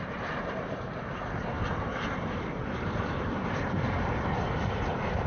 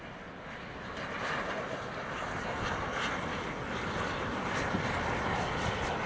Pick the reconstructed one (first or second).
first